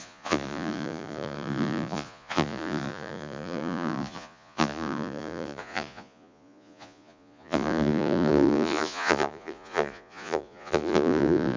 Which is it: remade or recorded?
remade